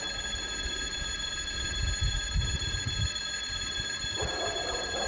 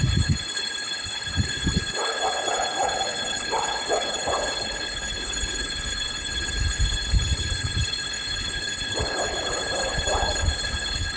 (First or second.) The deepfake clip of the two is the second